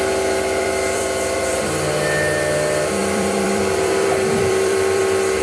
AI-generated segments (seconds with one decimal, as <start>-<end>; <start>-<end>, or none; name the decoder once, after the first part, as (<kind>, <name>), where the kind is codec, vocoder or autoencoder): 0.6-1.6 (vocoder, BigVGAN v2); 3.0-5.0